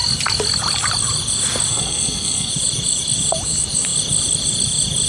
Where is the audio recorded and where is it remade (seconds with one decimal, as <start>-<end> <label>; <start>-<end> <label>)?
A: 0.0-1.7 recorded; 1.7-2.5 remade; 2.5-5.1 recorded